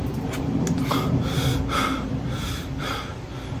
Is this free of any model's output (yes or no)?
yes